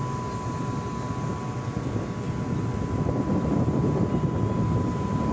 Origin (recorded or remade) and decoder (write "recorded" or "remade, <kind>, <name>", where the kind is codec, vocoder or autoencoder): recorded